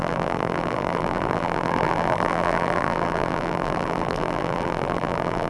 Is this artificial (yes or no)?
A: yes